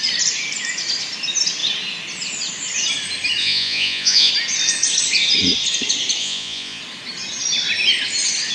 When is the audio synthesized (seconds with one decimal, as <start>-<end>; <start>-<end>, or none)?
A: 3.4-4.3; 6.2-6.8